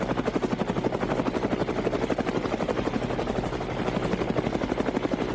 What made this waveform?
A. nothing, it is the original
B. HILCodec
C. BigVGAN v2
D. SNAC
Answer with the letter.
A